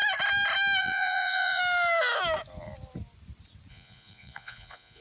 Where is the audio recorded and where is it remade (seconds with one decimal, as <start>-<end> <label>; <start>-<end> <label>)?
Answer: 0.0-0.8 recorded; 0.8-1.6 remade; 1.6-3.7 recorded; 3.7-5.0 remade